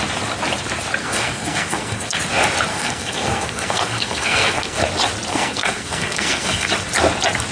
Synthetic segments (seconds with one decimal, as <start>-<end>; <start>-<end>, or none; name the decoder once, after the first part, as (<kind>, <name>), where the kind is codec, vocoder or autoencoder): 1.0-2.2 (codec, SNAC); 2.7-4.8; 5.3-6.7